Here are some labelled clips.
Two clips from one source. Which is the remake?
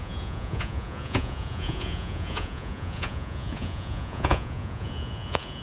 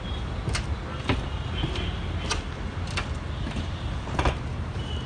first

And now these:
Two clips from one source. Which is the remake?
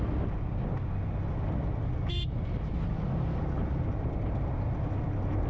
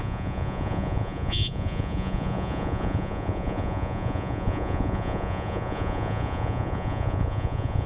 second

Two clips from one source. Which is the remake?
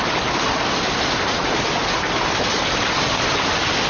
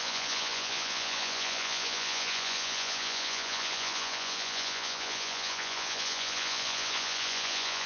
second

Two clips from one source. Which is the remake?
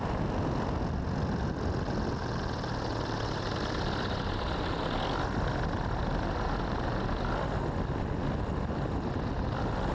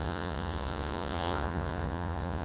second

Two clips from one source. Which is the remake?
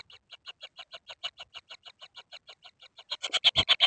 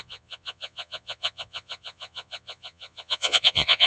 second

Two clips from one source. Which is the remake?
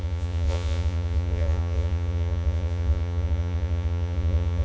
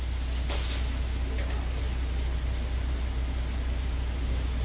first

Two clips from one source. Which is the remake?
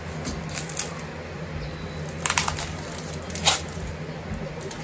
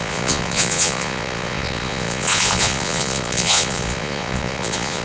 second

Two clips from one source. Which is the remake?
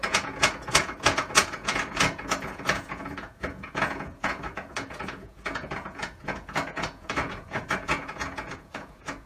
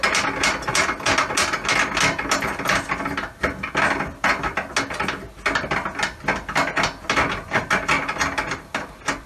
first